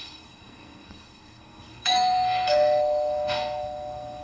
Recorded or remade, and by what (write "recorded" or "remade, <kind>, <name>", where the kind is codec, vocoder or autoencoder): remade, codec, SNAC